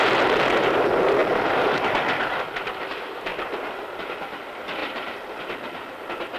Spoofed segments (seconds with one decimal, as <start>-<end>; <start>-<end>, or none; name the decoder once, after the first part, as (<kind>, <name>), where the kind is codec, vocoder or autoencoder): 1.2-2.9 (vocoder, BigVGAN v2); 3.3-4.2; 4.8-5.4